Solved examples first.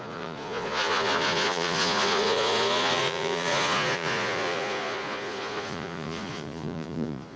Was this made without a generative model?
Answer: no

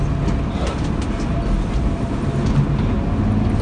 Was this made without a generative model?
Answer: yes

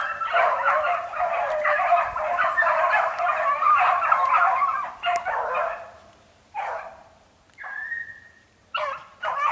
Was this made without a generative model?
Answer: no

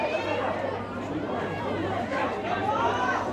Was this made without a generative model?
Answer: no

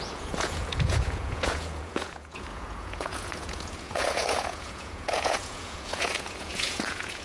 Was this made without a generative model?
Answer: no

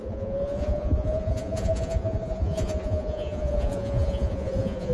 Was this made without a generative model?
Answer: no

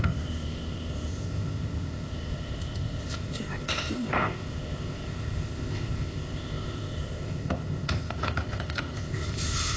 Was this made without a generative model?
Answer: no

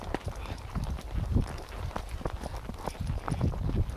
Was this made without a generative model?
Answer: yes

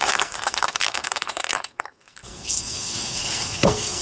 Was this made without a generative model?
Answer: no